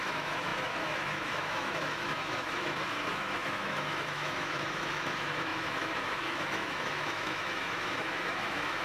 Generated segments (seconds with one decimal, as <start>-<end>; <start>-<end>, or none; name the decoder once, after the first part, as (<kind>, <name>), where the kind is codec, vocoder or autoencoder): 0.0-8.8 (autoencoder, DAC-VAE)